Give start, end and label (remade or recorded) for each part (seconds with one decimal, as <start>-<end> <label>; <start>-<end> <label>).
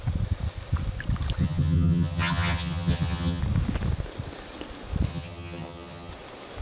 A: 0.0-1.4 recorded; 1.4-3.4 remade; 3.4-5.1 recorded; 5.1-6.1 remade; 6.1-6.6 recorded